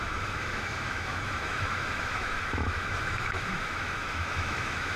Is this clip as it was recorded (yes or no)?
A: no